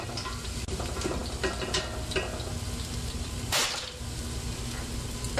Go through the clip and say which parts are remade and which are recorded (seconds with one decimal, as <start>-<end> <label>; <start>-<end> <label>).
0.0-5.4 recorded